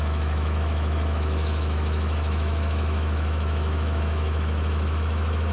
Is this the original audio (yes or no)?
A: no